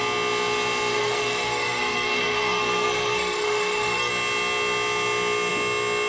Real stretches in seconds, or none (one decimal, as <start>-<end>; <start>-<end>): 0.0-0.9; 4.1-6.1